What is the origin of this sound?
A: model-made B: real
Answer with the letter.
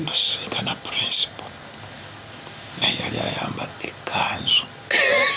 B